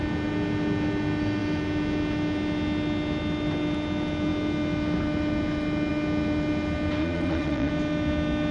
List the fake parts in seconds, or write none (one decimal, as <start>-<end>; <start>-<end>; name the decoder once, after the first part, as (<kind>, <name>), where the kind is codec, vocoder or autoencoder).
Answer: 7.0-7.7 (vocoder, Vocos)